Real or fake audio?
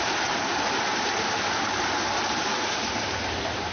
fake